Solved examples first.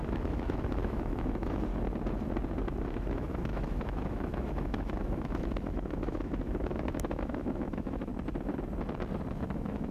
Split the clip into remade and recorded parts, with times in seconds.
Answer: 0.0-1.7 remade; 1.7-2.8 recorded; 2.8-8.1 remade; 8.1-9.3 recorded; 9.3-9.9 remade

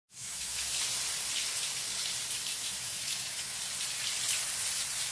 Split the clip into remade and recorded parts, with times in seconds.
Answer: 0.0-0.7 remade; 0.7-2.5 recorded; 2.5-3.6 remade; 3.6-5.1 recorded

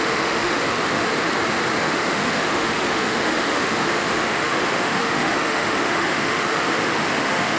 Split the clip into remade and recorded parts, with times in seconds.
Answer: 0.0-1.1 remade; 1.1-1.8 recorded; 1.8-7.6 remade